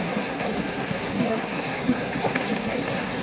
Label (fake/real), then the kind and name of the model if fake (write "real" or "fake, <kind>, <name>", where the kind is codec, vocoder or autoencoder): fake, codec, SNAC